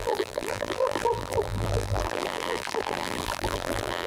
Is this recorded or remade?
remade